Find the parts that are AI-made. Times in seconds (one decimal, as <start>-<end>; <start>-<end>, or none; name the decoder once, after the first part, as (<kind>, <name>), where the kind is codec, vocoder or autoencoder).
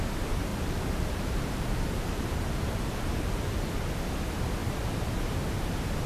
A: 0.5-3.7 (vocoder, BigVGAN v2)